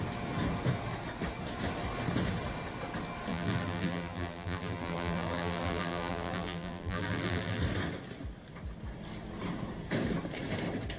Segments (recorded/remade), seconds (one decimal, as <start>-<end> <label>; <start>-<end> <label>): 0.0-3.3 recorded; 3.3-7.6 remade; 7.6-11.0 recorded